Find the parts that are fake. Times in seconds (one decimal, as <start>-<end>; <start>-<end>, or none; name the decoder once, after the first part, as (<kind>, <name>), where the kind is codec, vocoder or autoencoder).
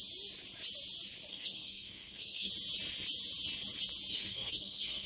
1.3-2.5 (codec, SNAC); 4.1-5.1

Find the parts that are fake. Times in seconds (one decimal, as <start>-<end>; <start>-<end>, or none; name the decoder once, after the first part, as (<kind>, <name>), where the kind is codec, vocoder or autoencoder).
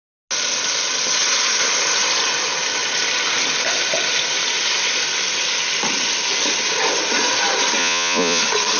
7.8-8.4 (vocoder, Vocos)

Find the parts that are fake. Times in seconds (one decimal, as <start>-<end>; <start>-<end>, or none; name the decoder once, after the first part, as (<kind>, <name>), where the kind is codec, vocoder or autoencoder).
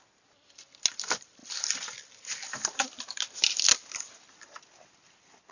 none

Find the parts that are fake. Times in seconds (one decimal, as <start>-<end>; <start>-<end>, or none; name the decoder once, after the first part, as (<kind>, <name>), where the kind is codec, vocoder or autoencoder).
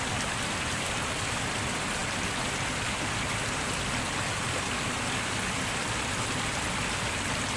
none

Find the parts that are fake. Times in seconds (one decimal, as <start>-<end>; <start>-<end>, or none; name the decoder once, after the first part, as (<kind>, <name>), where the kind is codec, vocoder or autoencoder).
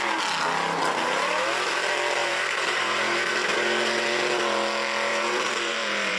2.2-3.3 (vocoder, BigVGAN v2); 5.1-6.2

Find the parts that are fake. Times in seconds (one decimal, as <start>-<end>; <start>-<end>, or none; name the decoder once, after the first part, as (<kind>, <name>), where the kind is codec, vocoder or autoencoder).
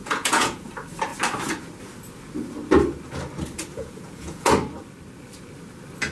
0.0-0.7 (vocoder, Vocos); 3.7-4.5